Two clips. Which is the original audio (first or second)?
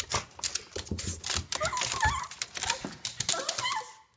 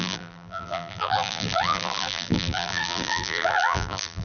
first